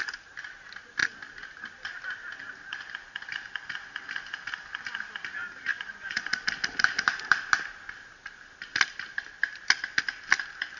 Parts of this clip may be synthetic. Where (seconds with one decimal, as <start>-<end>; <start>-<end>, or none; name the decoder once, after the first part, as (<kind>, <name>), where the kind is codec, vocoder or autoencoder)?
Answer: 5.7-6.3 (vocoder, Vocos)